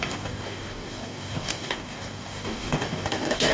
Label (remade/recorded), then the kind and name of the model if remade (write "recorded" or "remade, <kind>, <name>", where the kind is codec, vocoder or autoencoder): remade, codec, DAC